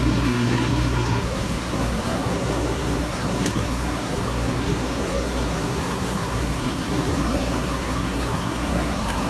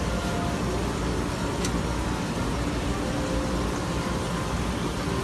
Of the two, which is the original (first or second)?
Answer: second